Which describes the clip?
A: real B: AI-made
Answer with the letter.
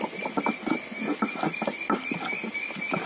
A